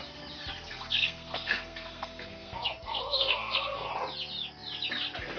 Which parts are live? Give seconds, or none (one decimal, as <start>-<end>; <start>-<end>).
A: 0.0-0.7; 3.9-5.4